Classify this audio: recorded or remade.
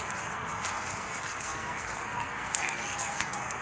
remade